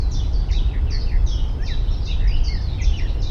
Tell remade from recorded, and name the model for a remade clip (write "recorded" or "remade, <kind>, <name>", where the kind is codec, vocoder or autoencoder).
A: recorded